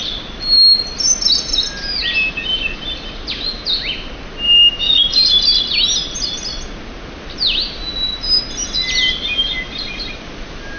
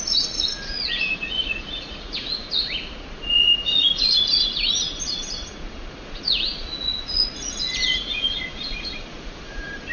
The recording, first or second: first